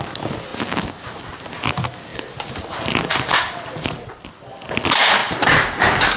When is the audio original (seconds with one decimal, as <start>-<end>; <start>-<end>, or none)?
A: 0.0-2.1; 4.2-5.2